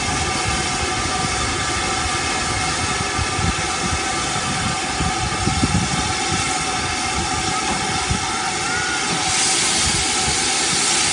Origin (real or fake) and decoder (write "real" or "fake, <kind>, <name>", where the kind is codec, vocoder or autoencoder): real